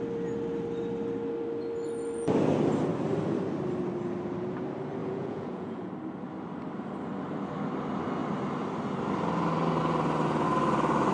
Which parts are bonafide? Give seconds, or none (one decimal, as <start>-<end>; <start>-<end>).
0.0-5.0; 5.9-11.1